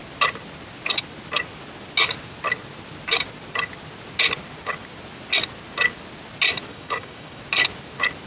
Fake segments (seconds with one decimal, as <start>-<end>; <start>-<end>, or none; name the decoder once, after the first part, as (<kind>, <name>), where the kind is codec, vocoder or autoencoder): 6.7-7.4 (codec, DAC)